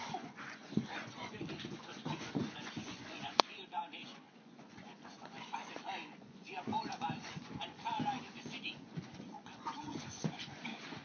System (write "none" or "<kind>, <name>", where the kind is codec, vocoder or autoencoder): vocoder, Vocos